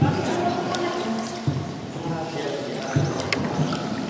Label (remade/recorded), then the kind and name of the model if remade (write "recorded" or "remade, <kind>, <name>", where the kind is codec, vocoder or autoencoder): recorded